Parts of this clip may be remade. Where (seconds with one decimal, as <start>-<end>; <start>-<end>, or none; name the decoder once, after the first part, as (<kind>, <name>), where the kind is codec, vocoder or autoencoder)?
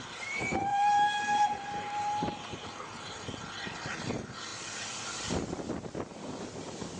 0.7-2.8 (vocoder, BigVGAN v2)